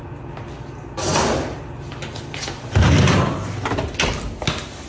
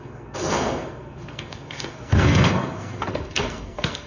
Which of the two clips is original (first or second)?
first